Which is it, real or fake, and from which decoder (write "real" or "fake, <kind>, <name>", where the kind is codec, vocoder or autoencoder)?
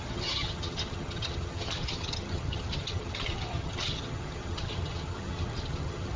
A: fake, vocoder, HiFi-GAN